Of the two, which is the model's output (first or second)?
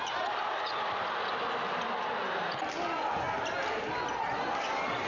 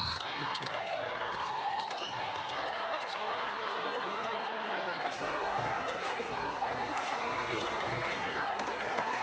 second